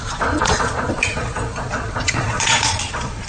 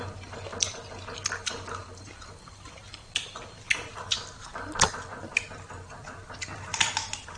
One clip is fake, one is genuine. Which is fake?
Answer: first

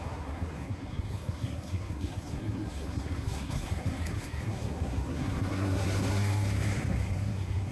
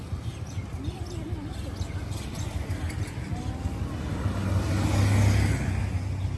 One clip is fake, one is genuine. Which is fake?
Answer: first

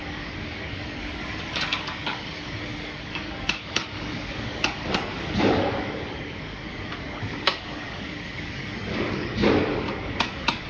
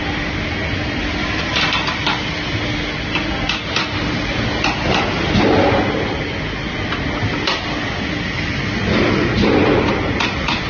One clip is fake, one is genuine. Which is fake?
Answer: first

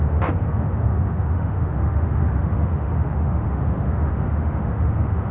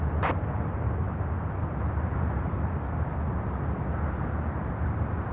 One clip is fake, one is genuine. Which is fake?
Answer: first